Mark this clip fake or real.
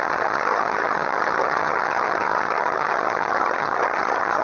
fake